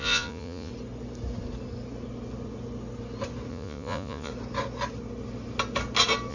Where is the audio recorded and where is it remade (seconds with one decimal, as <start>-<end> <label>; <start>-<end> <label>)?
0.0-0.7 remade; 0.7-3.5 recorded; 3.5-4.3 remade; 4.3-6.3 recorded